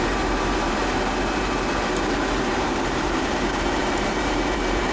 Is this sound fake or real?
fake